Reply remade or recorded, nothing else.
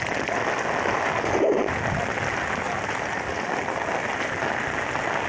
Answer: recorded